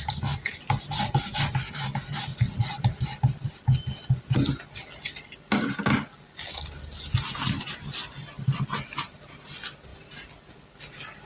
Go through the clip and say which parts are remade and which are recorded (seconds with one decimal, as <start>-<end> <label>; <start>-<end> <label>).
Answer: 0.0-2.3 recorded; 2.3-3.0 remade; 3.0-11.3 recorded